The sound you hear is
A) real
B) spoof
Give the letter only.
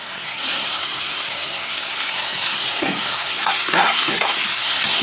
B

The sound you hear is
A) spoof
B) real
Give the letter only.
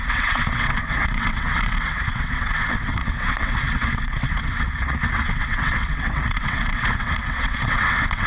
A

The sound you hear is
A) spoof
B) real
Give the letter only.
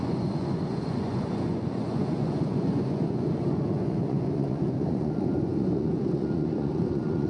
A